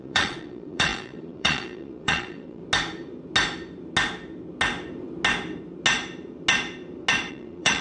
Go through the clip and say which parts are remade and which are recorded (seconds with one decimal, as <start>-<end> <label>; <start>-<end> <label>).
0.0-2.6 remade; 2.6-7.3 recorded; 7.3-7.8 remade